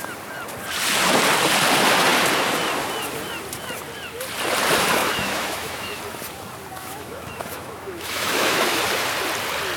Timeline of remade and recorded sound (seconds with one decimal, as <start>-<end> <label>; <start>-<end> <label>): 0.0-5.0 recorded; 5.0-6.0 remade; 6.0-6.8 recorded; 6.8-8.8 remade; 8.8-9.8 recorded